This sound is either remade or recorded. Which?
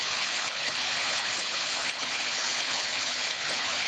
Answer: remade